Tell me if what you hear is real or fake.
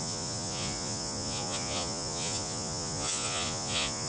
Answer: fake